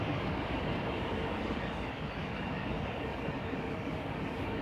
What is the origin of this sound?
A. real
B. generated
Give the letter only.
B